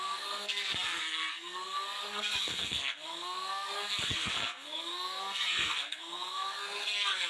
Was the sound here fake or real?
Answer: fake